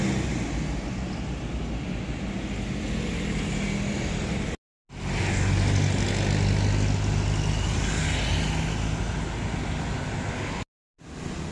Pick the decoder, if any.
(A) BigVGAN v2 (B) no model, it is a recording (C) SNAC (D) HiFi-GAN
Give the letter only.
B